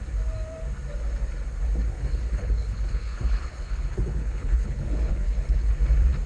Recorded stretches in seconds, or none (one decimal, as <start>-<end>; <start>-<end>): 0.0-1.9; 5.7-6.3